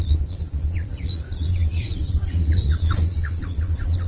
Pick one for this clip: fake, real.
fake